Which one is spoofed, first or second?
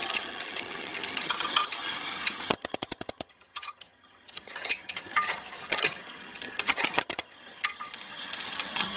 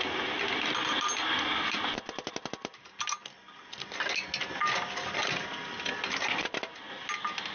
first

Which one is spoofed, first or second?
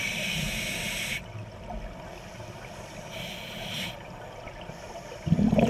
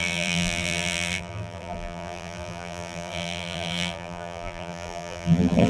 second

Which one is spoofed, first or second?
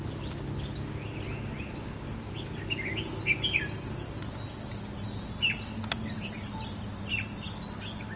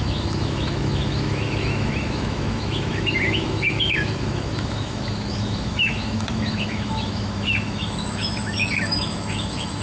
second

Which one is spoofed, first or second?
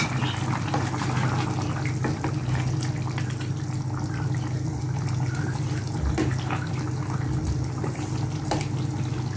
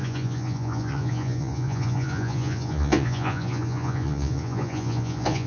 second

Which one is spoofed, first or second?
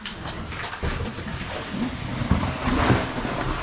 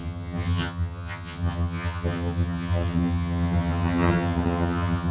second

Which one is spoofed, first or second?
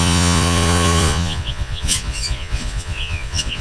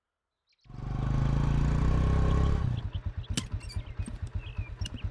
first